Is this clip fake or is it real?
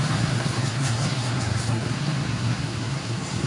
fake